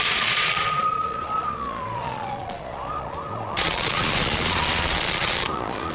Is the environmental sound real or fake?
fake